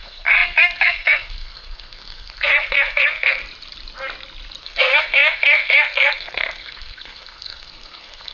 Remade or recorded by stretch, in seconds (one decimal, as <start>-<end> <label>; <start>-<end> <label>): 0.0-3.4 remade; 3.4-4.6 recorded; 4.6-8.3 remade